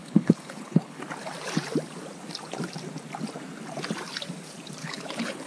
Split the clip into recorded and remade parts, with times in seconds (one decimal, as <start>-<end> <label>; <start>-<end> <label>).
0.0-1.0 remade; 1.0-4.8 recorded; 4.8-5.5 remade